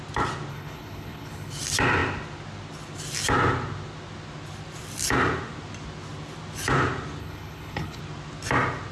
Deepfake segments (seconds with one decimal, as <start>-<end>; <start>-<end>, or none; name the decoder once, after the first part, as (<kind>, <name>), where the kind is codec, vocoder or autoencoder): 0.5-1.6 (codec, HILCodec); 7.2-8.0